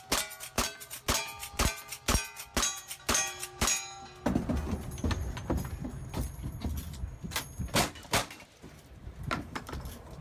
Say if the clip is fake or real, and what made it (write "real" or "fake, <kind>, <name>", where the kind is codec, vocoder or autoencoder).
real